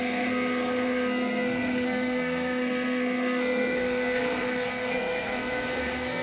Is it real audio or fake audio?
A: fake